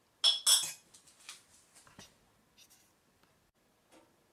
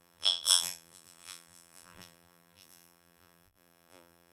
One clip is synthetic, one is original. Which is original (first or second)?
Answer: first